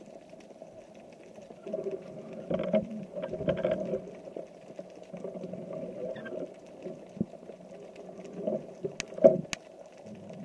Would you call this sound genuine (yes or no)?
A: yes